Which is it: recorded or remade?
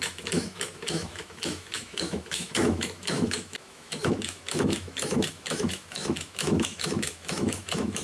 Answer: remade